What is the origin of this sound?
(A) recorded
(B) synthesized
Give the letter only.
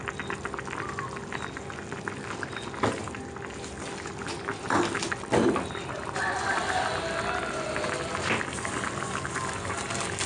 A